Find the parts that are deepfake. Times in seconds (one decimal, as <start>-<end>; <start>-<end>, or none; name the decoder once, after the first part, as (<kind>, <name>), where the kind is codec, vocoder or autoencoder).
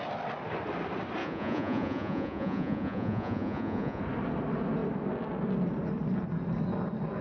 1.2-4.0 (vocoder, Vocos)